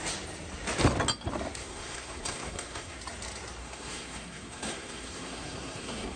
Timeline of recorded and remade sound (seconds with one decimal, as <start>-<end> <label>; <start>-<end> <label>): 0.0-1.6 recorded; 1.6-3.0 remade; 3.0-3.6 recorded; 3.6-6.2 remade